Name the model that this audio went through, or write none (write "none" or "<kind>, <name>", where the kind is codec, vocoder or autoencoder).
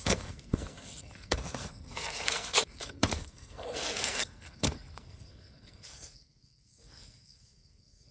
codec, SNAC